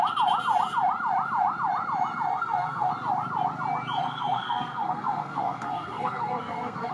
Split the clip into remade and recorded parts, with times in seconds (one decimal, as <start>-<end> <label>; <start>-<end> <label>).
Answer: 0.0-2.3 recorded; 2.3-2.9 remade; 2.9-4.0 recorded; 4.0-6.9 remade

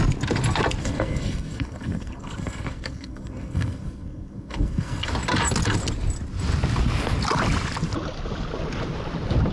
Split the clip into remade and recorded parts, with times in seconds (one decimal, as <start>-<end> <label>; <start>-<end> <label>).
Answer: 0.0-0.8 recorded; 0.8-5.1 remade; 5.1-9.5 recorded